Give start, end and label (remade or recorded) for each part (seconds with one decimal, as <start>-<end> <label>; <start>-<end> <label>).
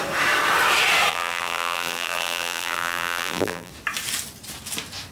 0.0-1.1 recorded; 1.1-3.7 remade; 3.7-5.1 recorded